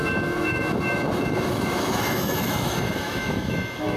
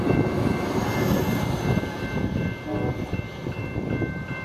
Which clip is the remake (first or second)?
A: first